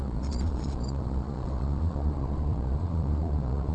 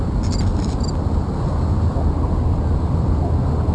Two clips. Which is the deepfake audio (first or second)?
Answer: first